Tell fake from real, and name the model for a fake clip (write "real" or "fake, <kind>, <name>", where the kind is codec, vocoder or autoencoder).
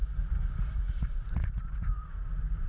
fake, vocoder, Vocos